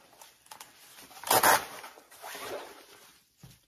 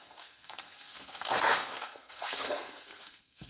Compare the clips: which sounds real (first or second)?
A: first